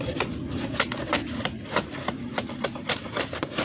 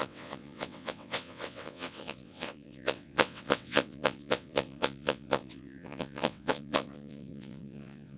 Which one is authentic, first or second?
first